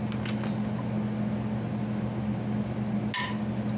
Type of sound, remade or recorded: recorded